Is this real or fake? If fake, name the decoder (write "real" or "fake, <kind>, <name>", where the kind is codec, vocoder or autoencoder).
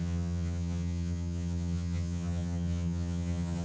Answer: fake, vocoder, HiFi-GAN